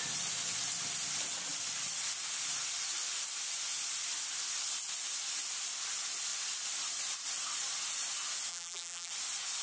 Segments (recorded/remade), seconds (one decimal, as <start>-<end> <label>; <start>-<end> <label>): 0.0-8.5 recorded; 8.5-9.1 remade; 9.1-9.6 recorded